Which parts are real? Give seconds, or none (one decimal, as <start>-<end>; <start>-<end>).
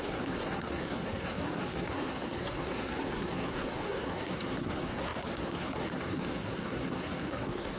none